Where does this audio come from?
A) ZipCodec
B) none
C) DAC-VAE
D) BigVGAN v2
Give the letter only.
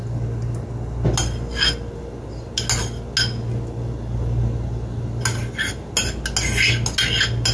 B